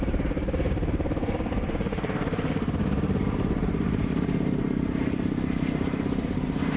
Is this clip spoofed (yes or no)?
yes